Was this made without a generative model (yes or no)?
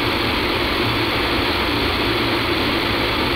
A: yes